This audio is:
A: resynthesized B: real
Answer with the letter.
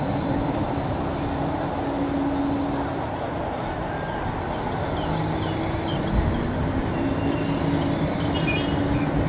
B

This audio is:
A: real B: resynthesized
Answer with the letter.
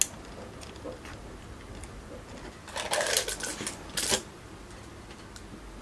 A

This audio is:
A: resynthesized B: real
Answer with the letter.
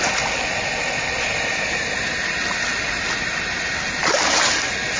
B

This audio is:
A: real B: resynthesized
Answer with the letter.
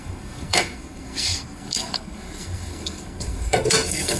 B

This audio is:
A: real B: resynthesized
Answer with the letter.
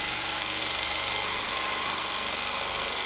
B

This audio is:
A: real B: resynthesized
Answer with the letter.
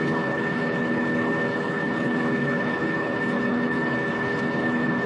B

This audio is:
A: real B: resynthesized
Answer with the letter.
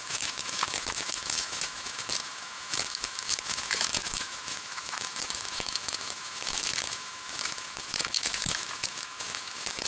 B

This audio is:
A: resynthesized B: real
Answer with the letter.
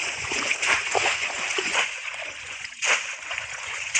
A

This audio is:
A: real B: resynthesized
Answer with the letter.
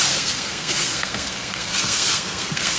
B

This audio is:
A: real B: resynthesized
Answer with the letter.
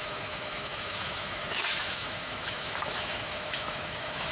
B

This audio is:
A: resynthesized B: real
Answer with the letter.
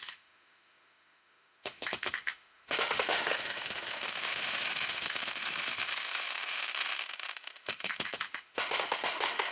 A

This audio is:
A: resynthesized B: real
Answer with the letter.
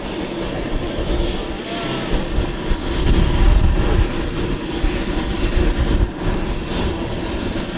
B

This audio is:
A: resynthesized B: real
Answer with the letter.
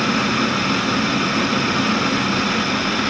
B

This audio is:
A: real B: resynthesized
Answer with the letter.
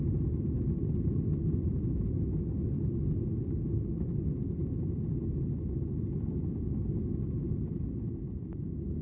A